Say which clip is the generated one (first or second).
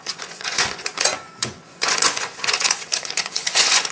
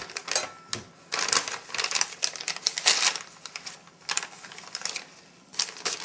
first